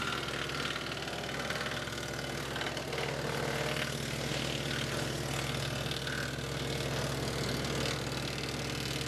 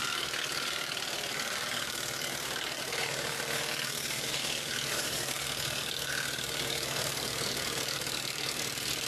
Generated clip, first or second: second